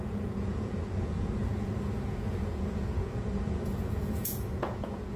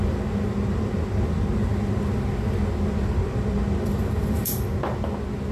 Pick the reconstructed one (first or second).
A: first